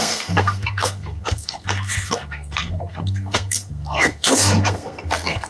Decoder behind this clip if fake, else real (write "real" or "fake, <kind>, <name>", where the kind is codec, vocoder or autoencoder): fake, codec, SNAC